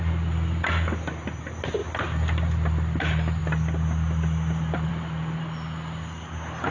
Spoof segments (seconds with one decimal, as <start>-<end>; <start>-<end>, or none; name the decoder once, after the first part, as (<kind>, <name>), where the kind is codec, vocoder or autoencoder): none